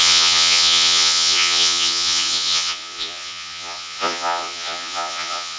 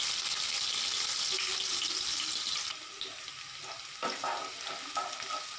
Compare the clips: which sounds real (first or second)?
second